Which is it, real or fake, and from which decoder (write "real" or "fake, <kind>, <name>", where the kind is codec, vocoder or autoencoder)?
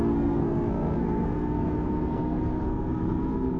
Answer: fake, codec, SNAC